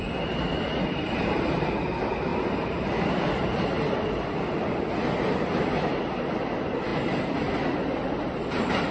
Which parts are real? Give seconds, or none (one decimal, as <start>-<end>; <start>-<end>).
0.0-8.9